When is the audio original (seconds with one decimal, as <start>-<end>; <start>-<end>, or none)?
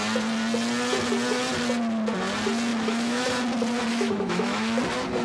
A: 0.0-2.7; 3.3-3.9; 4.8-5.2